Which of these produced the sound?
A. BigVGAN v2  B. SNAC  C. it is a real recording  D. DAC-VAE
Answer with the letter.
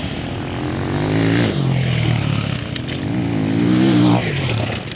C